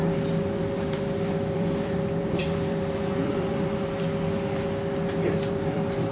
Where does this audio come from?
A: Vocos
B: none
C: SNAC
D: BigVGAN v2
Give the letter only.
D